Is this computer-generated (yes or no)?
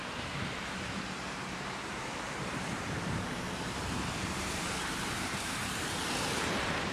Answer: yes